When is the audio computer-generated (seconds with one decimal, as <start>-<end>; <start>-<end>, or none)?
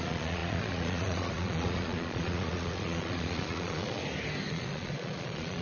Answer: 0.0-4.0; 4.5-5.6